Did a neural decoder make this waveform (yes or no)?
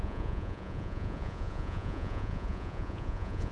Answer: yes